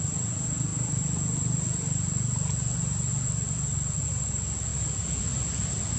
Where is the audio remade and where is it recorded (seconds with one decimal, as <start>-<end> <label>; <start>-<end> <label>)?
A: 0.0-6.0 recorded